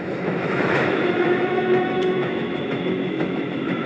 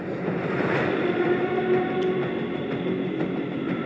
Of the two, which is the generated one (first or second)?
first